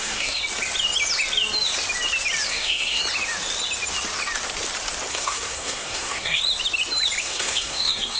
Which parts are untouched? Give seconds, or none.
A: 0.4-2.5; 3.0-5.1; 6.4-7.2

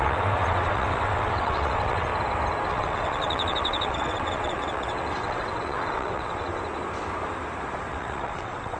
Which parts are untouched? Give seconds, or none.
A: 2.1-2.7; 6.5-7.9

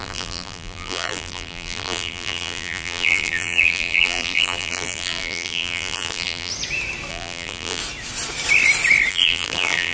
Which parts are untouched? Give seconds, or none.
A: 6.5-7.1; 7.8-9.1

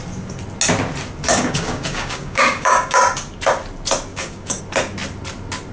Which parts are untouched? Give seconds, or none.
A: 0.0-1.3; 3.0-4.1; 4.6-5.7

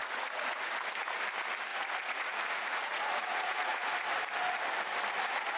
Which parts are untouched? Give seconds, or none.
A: 0.8-1.7; 3.9-5.6

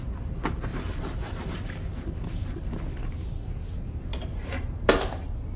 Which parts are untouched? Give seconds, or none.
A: 0.0-0.7; 3.1-5.6